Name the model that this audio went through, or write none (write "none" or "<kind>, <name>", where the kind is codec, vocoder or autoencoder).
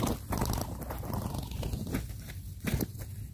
none